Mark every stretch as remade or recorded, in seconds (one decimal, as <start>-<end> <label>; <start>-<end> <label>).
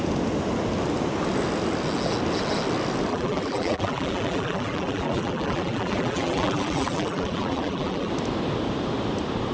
0.0-3.1 recorded; 3.1-8.1 remade; 8.1-9.5 recorded